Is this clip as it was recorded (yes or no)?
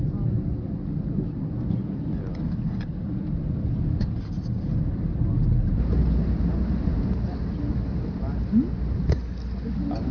yes